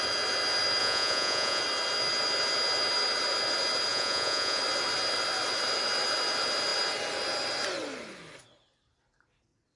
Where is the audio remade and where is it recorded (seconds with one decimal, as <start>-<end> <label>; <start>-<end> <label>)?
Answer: 0.0-0.8 recorded; 0.8-1.6 remade; 1.6-3.9 recorded; 3.9-4.6 remade; 4.6-9.8 recorded